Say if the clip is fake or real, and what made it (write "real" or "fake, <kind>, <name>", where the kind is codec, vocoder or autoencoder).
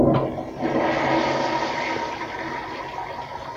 real